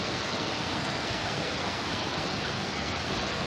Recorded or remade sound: remade